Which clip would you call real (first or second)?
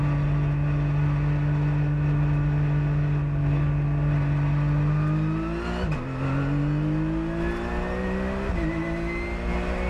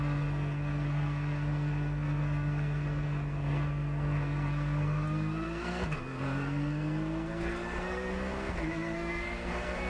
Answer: first